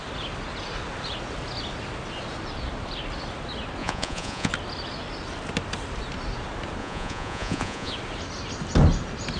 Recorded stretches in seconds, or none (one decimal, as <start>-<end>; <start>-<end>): 0.0-3.8; 4.5-6.8; 7.9-9.4